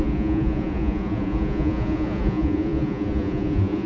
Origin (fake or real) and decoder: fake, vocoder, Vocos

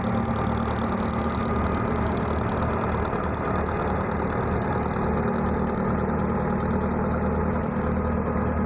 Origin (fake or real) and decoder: real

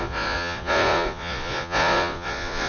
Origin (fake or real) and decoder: fake, vocoder, Vocos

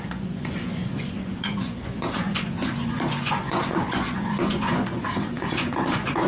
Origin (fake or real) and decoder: fake, vocoder, Vocos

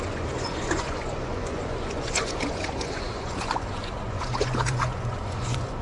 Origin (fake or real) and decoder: fake, vocoder, Vocos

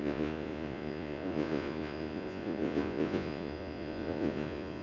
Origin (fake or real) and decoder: fake, vocoder, Vocos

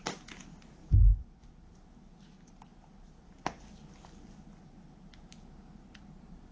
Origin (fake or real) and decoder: real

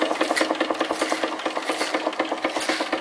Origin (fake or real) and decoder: real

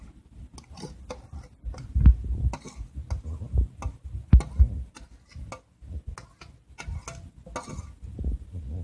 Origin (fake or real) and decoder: real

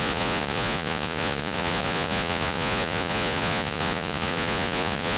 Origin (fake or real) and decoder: fake, vocoder, Vocos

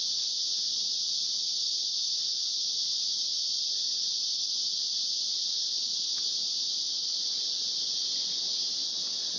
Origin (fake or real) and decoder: real